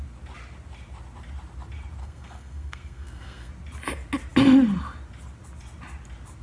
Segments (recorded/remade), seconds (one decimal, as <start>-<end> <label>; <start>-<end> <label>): 0.0-2.0 recorded; 2.0-3.5 remade; 3.5-6.4 recorded

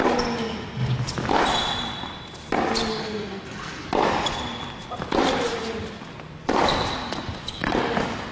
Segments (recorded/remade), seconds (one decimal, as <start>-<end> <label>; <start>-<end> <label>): 0.0-2.9 recorded; 2.9-3.8 remade; 3.8-8.3 recorded

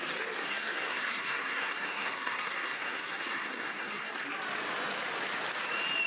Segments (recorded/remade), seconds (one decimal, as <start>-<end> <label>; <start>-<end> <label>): 0.0-0.4 recorded; 0.4-4.1 remade; 4.1-6.1 recorded

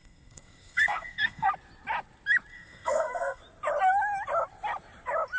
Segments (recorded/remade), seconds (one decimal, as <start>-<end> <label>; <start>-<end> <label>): 0.0-1.5 remade; 1.5-2.5 recorded; 2.5-3.4 remade; 3.4-5.4 recorded

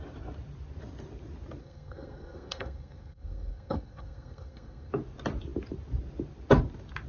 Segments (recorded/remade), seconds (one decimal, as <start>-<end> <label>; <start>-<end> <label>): 0.0-1.6 recorded; 1.6-4.9 remade; 4.9-7.1 recorded

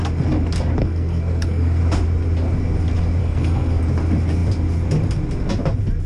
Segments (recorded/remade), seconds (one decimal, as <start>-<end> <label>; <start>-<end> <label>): 0.0-0.8 recorded; 0.8-1.8 remade; 1.8-3.2 recorded; 3.2-3.8 remade; 3.8-6.1 recorded

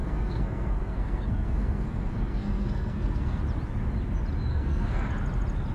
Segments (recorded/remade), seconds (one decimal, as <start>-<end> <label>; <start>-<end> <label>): 0.0-3.4 remade; 3.4-4.5 recorded; 4.5-5.1 remade; 5.1-5.7 recorded